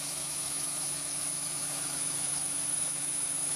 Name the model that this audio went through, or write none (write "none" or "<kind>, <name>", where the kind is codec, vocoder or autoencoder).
autoencoder, DAC-VAE